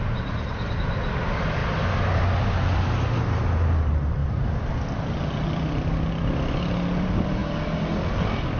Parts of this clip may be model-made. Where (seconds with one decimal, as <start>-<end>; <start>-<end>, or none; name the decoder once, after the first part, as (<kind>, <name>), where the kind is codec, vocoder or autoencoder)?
none